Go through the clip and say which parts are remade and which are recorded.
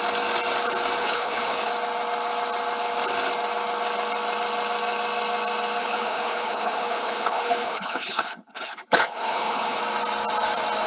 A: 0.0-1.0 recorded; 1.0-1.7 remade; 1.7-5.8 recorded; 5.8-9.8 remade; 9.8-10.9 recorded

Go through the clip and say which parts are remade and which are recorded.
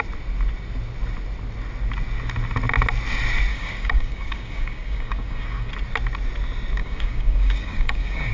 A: 0.0-3.5 recorded; 3.5-5.7 remade; 5.7-6.8 recorded; 6.8-8.3 remade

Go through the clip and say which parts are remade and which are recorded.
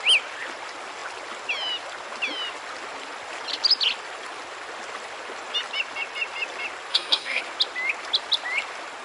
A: 0.0-6.9 recorded; 6.9-7.4 remade; 7.4-9.0 recorded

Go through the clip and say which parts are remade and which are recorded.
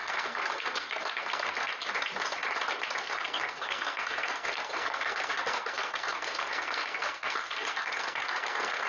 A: 0.0-1.7 remade; 1.7-3.0 recorded; 3.0-8.9 remade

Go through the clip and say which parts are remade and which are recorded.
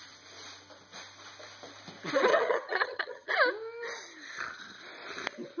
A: 0.0-2.3 recorded; 2.3-3.3 remade; 3.3-5.6 recorded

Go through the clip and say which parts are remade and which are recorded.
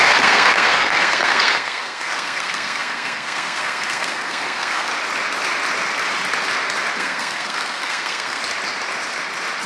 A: 0.0-4.9 remade; 4.9-6.9 recorded; 6.9-8.4 remade; 8.4-9.7 recorded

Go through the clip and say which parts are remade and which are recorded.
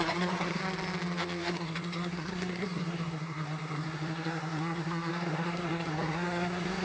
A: 0.0-0.6 remade; 0.6-1.4 recorded; 1.4-6.8 remade